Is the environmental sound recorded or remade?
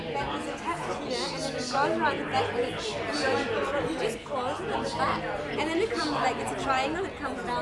recorded